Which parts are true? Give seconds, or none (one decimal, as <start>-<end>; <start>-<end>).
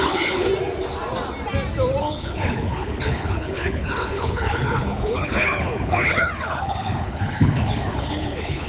0.5-2.0